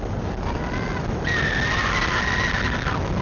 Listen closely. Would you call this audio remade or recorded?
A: recorded